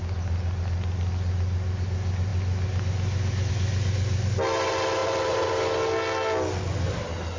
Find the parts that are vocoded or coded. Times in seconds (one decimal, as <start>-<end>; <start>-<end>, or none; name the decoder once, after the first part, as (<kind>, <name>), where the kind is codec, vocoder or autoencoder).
5.0-5.5 (vocoder, BigVGAN v2)